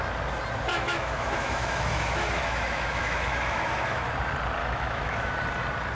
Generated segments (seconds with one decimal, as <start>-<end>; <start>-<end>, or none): 0.7-4.1; 4.6-5.3